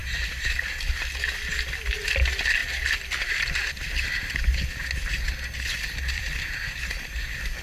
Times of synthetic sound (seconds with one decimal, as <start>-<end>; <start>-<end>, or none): none